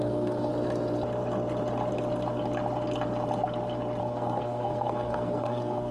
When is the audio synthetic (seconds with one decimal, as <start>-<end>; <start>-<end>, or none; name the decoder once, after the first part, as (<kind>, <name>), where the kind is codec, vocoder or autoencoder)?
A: 0.0-0.5 (codec, SNAC); 4.0-5.9